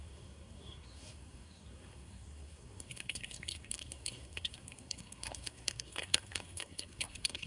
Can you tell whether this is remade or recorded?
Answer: remade